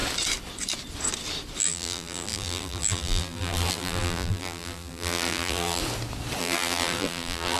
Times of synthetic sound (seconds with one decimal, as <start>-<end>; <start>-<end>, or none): 1.6-5.8; 6.4-7.6